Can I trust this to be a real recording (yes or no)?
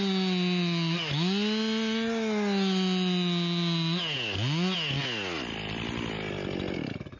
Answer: yes